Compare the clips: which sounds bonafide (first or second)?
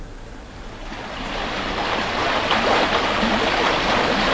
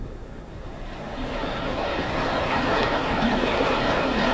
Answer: first